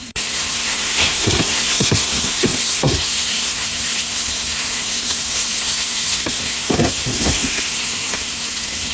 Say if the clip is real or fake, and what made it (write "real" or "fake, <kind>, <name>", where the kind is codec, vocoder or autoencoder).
fake, codec, SNAC